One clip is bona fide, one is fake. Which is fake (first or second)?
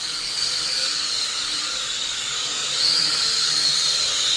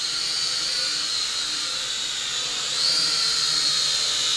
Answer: first